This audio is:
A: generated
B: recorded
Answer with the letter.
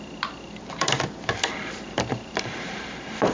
A